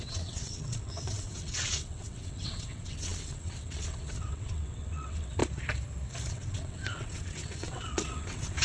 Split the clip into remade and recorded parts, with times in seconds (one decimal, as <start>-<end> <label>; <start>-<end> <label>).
0.0-5.4 remade; 5.4-6.3 recorded; 6.3-8.6 remade